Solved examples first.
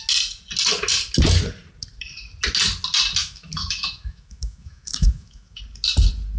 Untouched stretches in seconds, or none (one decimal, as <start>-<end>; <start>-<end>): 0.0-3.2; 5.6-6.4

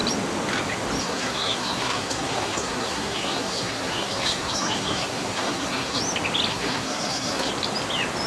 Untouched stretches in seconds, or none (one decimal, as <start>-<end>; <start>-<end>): 0.0-1.0; 6.0-6.5; 7.5-8.3

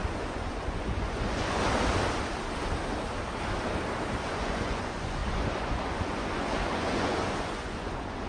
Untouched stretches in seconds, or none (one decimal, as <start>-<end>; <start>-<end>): 1.7-4.2